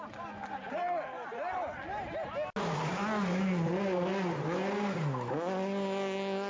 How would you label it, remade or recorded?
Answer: recorded